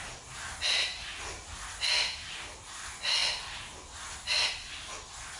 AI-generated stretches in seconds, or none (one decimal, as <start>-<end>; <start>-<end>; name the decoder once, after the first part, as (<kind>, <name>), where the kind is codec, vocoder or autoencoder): none